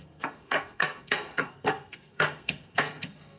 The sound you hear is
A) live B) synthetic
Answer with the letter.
B